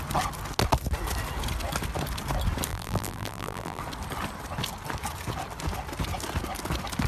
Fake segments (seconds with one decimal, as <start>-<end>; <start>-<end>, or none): 2.7-3.8